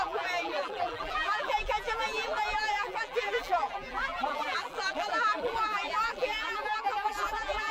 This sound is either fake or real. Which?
fake